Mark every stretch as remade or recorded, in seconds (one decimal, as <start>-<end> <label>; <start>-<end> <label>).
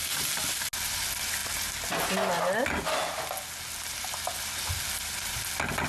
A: 0.0-5.9 recorded